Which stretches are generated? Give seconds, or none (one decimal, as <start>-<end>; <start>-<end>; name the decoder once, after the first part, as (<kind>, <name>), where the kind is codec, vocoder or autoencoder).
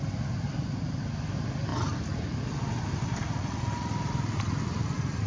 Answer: none